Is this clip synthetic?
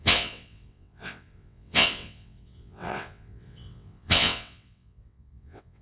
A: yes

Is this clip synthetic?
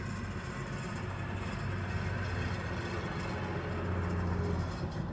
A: no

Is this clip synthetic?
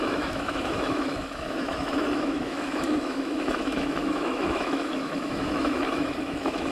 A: yes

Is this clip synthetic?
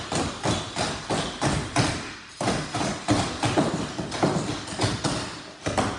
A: no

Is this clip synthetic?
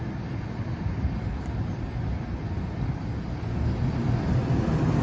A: no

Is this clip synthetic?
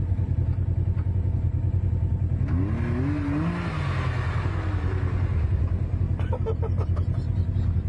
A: no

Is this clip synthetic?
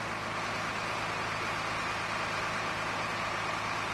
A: no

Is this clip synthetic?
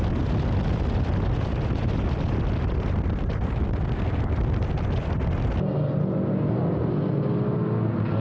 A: no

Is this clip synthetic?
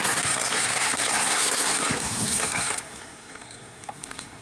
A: yes